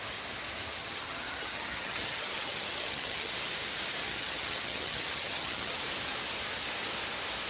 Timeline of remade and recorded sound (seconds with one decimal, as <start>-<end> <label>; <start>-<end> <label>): 0.0-0.8 recorded; 0.8-3.3 remade; 3.3-4.0 recorded; 4.0-5.7 remade; 5.7-7.5 recorded